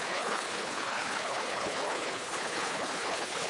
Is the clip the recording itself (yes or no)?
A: no